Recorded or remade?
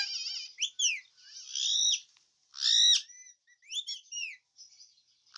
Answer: recorded